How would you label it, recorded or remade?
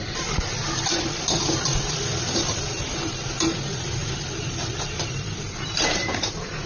remade